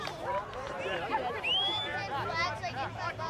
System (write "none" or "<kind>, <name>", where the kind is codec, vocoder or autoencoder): none